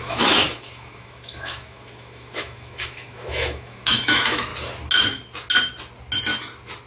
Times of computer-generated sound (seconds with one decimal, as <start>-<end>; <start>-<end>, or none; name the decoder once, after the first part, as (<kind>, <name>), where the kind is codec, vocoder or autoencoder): 0.0-4.5 (autoencoder, DAC-VAE)